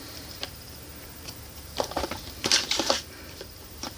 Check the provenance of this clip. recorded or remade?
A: remade